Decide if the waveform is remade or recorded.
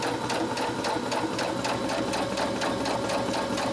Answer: recorded